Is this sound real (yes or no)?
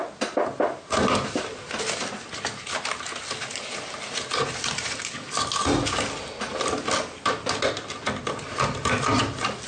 yes